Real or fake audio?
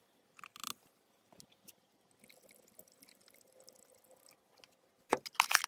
real